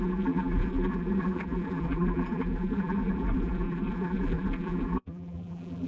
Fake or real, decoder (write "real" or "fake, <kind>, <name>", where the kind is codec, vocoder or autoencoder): fake, vocoder, BigVGAN v2